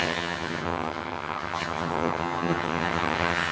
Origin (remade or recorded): remade